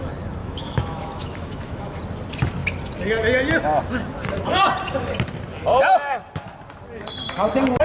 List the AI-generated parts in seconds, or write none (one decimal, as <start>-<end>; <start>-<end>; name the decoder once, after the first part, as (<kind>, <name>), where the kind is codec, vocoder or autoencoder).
0.4-2.0 (autoencoder, DAC-VAE)